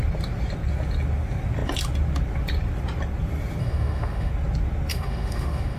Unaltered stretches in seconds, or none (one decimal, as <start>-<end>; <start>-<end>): 0.0-3.6; 4.3-4.9